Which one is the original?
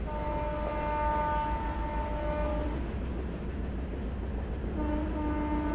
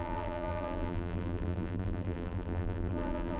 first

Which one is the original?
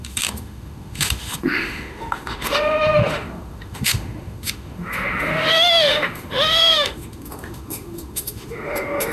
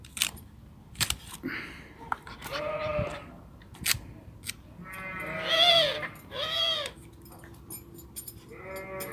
second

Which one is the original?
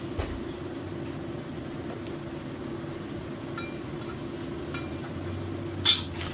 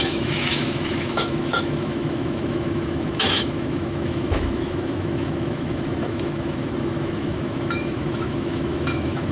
first